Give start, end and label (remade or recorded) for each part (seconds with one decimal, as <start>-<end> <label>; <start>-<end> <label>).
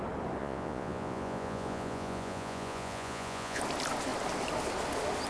0.0-0.4 recorded; 0.4-3.6 remade; 3.6-5.3 recorded